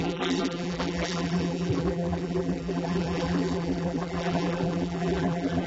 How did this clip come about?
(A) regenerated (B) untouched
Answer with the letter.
A